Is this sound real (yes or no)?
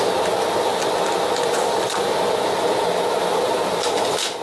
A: yes